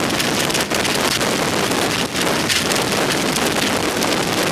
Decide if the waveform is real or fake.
real